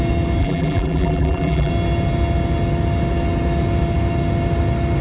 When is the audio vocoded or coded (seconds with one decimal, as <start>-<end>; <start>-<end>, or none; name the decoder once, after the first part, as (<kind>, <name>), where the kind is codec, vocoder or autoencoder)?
0.4-1.7 (vocoder, BigVGAN v2)